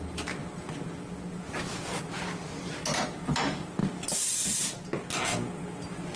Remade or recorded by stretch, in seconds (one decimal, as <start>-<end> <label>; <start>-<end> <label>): 0.0-6.2 recorded